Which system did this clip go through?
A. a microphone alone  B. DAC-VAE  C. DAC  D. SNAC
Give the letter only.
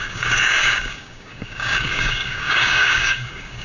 C